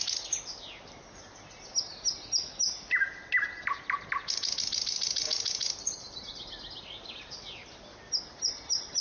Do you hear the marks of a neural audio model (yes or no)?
no